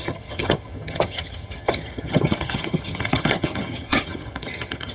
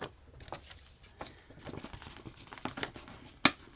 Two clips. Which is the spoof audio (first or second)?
first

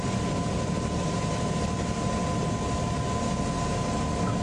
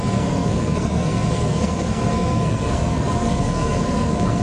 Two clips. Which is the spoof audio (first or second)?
second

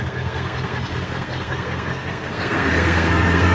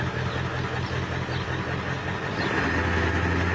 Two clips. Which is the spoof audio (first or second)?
first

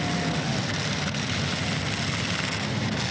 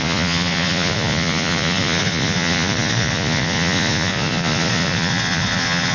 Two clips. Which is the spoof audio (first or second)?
second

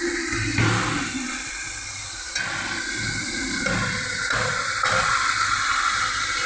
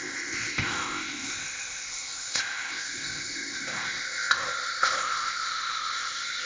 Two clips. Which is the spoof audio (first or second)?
second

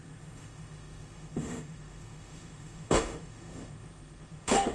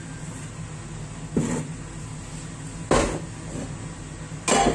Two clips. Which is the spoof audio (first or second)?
first